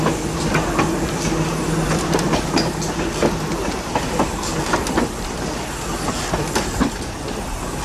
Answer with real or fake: real